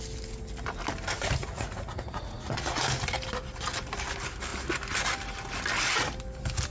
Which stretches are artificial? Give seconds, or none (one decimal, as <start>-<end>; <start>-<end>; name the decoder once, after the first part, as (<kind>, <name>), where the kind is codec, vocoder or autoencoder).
1.4-2.8 (vocoder, Vocos)